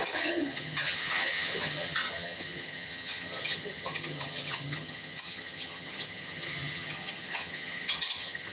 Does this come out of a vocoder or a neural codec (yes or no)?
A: yes